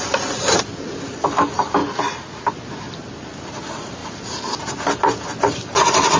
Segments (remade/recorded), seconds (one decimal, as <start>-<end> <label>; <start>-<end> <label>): 0.0-6.2 recorded